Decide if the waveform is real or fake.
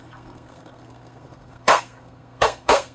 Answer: fake